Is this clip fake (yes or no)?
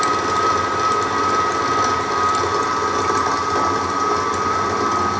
no